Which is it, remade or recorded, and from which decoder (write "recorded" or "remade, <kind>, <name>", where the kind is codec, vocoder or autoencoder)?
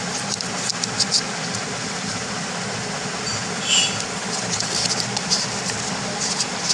recorded